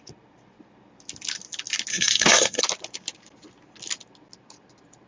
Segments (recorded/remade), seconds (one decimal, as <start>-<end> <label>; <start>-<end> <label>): 0.0-1.9 recorded; 1.9-2.6 remade; 2.6-5.1 recorded